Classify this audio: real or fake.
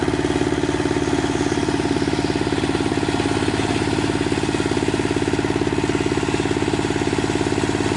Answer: real